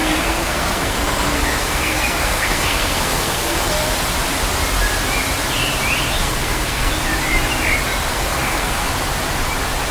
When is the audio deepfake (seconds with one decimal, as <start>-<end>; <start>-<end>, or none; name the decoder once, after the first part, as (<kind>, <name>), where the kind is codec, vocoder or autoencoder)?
0.0-3.9 (codec, SNAC); 6.2-6.9; 8.1-8.9